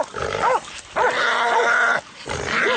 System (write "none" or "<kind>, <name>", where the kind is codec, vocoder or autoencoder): none